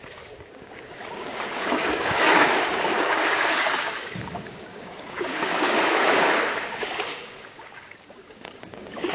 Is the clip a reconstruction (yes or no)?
yes